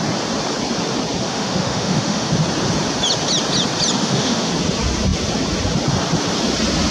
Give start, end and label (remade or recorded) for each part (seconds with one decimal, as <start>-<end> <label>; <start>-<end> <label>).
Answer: 0.0-1.2 recorded; 1.2-2.3 remade; 2.3-4.0 recorded; 4.0-4.5 remade; 4.5-6.9 recorded